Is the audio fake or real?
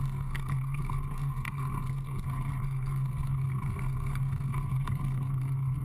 fake